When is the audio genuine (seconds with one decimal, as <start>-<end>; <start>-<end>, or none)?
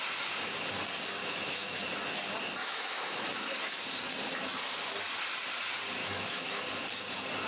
0.0-1.2; 1.8-2.6; 3.8-6.0; 6.6-7.5